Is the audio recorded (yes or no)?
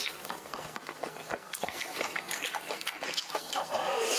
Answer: no